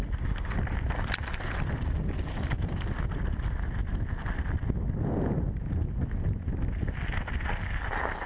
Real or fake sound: real